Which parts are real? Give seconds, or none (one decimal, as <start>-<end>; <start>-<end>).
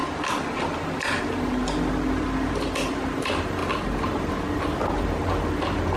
0.0-6.0